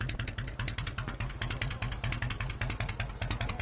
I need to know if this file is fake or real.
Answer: real